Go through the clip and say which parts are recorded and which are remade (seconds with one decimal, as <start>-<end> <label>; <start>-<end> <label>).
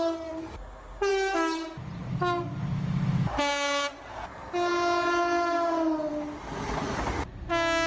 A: 0.0-7.9 recorded